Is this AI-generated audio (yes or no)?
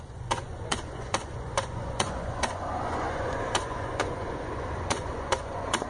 yes